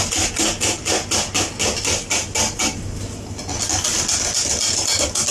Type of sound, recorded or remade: recorded